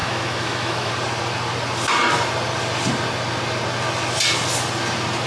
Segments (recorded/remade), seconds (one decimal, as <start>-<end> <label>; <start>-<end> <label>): 0.0-0.9 remade; 0.9-5.3 recorded